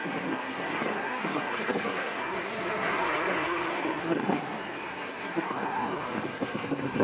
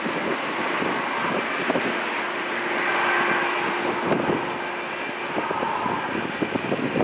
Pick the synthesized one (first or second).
first